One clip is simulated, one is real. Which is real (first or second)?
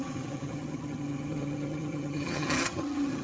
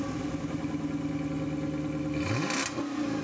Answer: second